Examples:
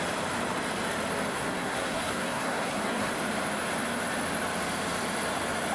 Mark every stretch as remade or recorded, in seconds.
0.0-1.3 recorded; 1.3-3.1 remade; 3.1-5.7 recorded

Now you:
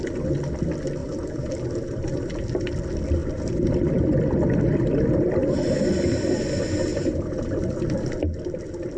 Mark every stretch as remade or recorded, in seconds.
0.0-1.0 recorded; 1.0-1.5 remade; 1.5-3.2 recorded; 3.2-3.7 remade; 3.7-6.9 recorded; 6.9-8.1 remade; 8.1-9.0 recorded

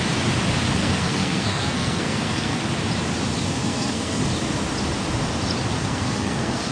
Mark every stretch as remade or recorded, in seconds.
0.0-0.8 recorded; 0.8-2.6 remade; 2.6-3.6 recorded; 3.6-4.2 remade; 4.2-5.7 recorded; 5.7-6.7 remade

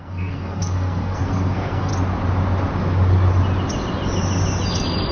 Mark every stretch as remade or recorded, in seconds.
0.0-1.9 remade; 1.9-5.1 recorded

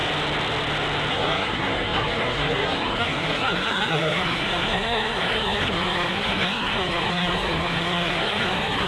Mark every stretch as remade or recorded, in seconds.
0.0-1.1 recorded; 1.1-8.9 remade

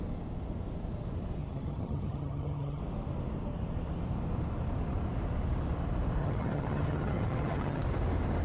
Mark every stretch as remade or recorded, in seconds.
0.0-1.4 recorded; 1.4-2.8 remade; 2.8-6.2 recorded; 6.2-7.8 remade; 7.8-8.4 recorded

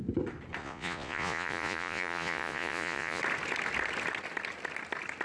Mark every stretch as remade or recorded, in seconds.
0.0-0.6 recorded; 0.6-3.2 remade; 3.2-5.2 recorded